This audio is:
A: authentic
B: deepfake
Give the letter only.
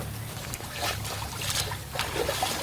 A